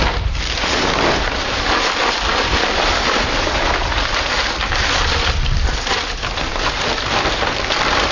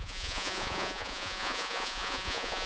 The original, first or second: first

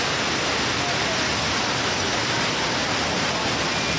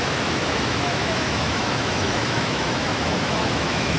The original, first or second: first